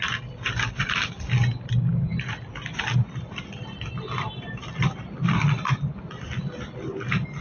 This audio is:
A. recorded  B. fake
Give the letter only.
A